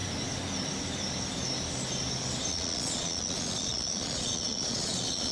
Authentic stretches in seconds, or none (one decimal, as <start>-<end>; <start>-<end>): 0.0-2.5